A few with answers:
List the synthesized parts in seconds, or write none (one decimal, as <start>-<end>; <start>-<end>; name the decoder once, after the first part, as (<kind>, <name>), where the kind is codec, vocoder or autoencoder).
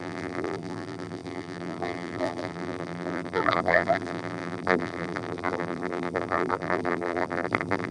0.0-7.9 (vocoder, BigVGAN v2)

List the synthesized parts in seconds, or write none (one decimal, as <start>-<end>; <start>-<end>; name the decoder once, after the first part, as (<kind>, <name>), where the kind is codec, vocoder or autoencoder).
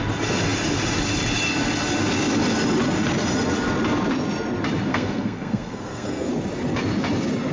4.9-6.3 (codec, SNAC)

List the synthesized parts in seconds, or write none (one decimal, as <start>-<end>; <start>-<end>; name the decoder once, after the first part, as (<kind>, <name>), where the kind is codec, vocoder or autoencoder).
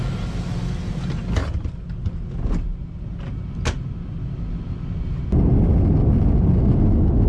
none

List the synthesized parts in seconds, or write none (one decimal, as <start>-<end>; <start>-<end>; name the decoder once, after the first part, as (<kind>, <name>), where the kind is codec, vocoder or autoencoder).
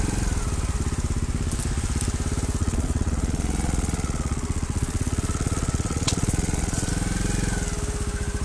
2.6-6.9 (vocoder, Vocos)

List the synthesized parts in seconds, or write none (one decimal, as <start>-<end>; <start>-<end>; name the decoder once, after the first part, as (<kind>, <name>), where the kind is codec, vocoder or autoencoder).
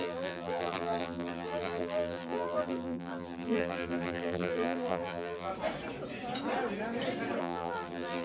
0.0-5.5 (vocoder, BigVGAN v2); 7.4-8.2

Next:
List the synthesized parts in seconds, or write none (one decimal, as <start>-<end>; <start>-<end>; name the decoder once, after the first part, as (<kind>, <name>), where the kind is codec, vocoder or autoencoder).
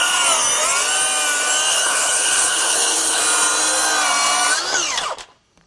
1.7-3.2 (codec, HILCodec)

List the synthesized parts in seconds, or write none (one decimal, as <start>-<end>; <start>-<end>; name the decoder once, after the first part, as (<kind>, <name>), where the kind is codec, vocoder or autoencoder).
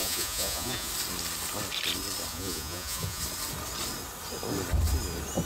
0.0-0.9 (vocoder, Vocos); 2.3-3.2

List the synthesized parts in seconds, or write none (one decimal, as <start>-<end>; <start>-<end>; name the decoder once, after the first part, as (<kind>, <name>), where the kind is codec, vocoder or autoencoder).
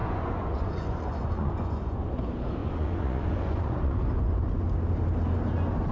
0.0-2.2 (vocoder, Vocos); 2.6-4.5